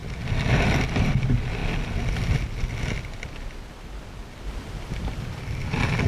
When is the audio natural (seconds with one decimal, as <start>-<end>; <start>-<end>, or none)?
0.0-6.1